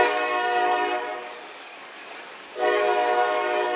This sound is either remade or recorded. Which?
remade